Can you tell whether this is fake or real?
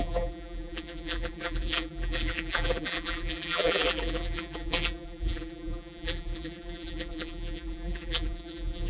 fake